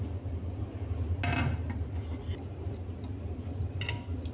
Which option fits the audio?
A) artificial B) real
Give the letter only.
B